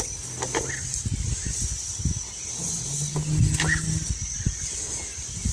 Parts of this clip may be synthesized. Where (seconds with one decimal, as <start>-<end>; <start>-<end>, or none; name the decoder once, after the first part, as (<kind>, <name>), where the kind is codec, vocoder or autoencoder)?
none